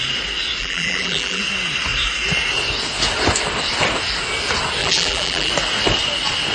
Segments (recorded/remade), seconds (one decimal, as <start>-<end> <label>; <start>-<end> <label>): 0.0-0.6 recorded; 0.6-1.4 remade; 1.4-4.8 recorded; 4.8-5.5 remade; 5.5-6.5 recorded